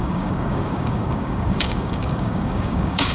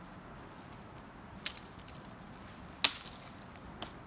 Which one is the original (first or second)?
second